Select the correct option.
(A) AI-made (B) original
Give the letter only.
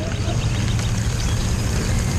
B